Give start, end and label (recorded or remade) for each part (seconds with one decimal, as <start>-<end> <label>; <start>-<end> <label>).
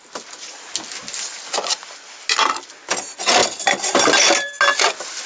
0.0-5.3 recorded